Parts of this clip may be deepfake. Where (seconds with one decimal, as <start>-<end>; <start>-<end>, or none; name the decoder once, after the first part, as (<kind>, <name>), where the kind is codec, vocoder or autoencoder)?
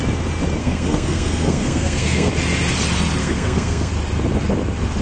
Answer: 0.6-2.3 (codec, SNAC); 3.2-3.9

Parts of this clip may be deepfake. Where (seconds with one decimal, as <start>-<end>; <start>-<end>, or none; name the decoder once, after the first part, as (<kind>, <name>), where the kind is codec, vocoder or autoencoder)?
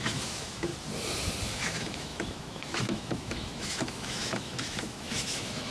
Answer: 0.0-0.7 (autoencoder, DAC-VAE); 1.5-5.7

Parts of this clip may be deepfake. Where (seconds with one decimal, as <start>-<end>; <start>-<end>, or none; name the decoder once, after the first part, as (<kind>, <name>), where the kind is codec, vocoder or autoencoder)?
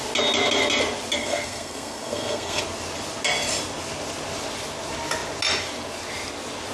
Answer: 1.2-2.6 (codec, SNAC)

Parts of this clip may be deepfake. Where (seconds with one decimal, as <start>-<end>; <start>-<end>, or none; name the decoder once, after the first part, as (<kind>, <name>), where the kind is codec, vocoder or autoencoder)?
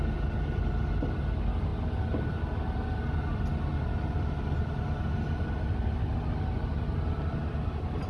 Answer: none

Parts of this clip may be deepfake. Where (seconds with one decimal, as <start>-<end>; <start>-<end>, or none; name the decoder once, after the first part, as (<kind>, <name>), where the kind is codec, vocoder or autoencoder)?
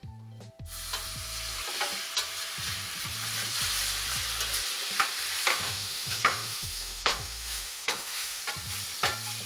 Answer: 5.5-8.4 (autoencoder, DAC-VAE)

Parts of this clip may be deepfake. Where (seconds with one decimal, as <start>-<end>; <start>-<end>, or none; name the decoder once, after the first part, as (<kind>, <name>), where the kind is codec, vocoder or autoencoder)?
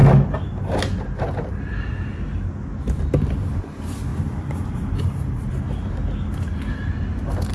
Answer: 4.1-5.5 (vocoder, BigVGAN v2)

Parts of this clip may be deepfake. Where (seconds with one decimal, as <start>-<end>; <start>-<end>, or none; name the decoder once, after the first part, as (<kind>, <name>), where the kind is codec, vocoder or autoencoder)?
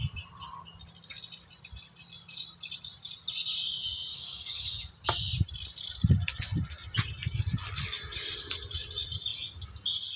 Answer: 4.1-4.9 (codec, DAC)